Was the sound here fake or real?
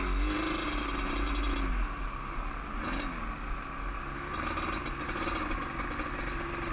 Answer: real